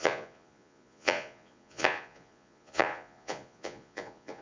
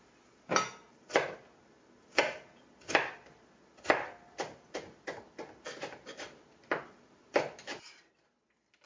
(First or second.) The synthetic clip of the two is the first